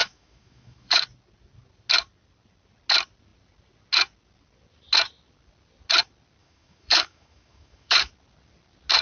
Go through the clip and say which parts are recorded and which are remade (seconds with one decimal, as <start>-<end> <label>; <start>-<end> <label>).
0.0-1.0 remade; 1.0-6.4 recorded; 6.4-8.1 remade; 8.1-9.0 recorded